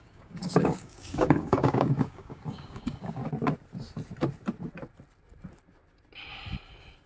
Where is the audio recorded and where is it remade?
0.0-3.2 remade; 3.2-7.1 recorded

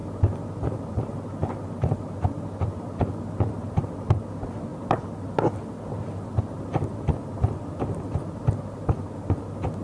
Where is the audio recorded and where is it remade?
0.0-9.8 recorded

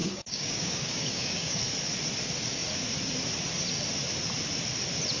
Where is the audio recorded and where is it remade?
0.0-1.6 remade; 1.6-5.2 recorded

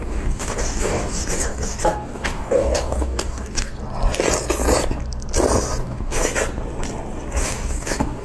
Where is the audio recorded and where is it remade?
0.0-3.7 remade; 3.7-5.8 recorded; 5.8-6.3 remade; 6.3-7.3 recorded; 7.3-8.2 remade

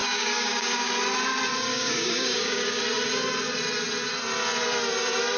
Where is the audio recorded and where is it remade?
0.0-0.9 remade; 0.9-1.7 recorded; 1.7-2.8 remade; 2.8-5.4 recorded

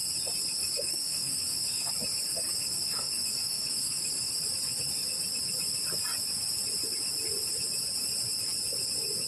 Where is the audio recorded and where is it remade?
0.0-0.6 recorded; 0.6-1.9 remade; 1.9-2.3 recorded; 2.3-4.3 remade; 4.3-9.3 recorded

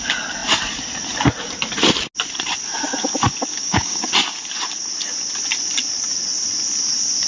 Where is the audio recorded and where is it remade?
0.0-3.5 recorded; 3.5-4.1 remade; 4.1-7.3 recorded